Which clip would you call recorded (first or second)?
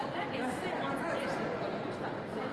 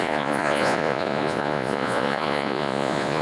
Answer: first